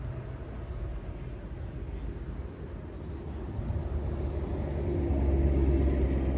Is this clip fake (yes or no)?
no